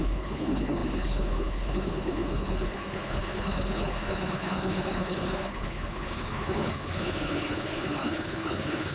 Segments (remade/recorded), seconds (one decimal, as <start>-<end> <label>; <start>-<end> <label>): 0.0-8.9 remade